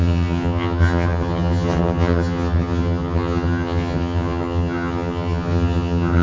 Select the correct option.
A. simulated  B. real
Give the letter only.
A